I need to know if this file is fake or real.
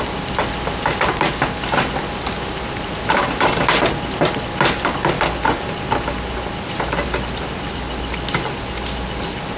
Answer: real